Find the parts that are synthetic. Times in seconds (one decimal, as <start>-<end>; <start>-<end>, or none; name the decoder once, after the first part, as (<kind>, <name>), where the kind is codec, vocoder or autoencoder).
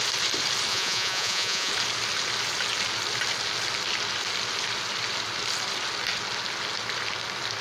0.7-1.7 (vocoder, Vocos)